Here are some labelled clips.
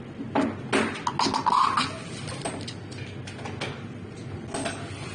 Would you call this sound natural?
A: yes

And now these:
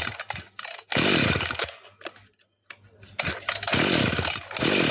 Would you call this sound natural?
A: yes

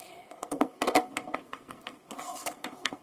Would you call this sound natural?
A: no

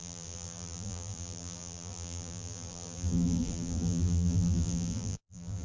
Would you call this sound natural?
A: no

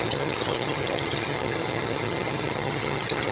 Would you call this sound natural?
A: no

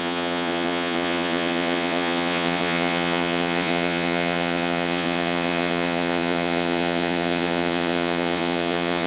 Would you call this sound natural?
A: no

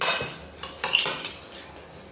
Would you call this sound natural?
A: yes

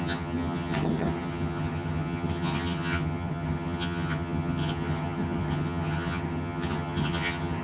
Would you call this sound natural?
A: no